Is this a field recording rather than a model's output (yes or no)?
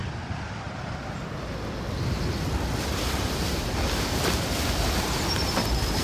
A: no